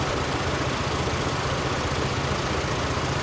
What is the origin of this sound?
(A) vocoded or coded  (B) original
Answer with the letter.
A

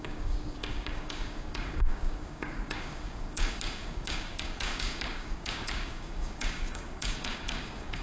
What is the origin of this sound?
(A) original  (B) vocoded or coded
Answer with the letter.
B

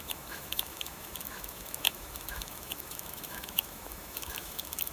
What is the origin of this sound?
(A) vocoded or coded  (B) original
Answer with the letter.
A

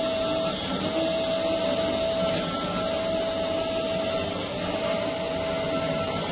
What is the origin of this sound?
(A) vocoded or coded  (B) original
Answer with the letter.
B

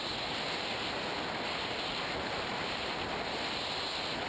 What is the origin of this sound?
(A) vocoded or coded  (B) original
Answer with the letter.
B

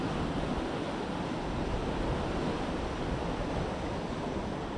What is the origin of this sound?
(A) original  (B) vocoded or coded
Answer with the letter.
A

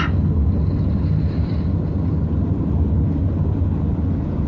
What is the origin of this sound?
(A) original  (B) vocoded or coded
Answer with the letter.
A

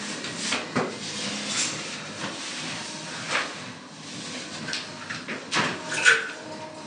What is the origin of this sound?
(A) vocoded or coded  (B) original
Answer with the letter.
B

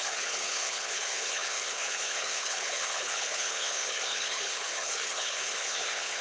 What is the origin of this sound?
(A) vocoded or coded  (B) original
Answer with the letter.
A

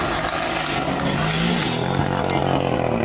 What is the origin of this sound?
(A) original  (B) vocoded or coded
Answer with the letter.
A